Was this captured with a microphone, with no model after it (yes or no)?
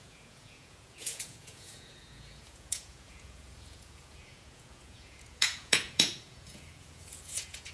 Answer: no